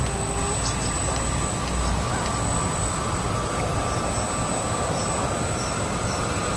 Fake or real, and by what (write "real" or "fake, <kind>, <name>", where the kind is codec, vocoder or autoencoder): real